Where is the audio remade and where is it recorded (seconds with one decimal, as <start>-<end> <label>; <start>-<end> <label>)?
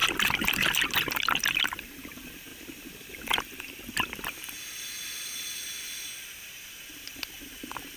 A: 0.0-1.2 recorded; 1.2-2.5 remade; 2.5-6.9 recorded; 6.9-8.0 remade